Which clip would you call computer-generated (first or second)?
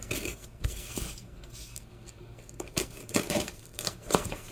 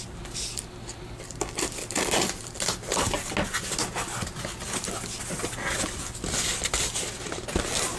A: first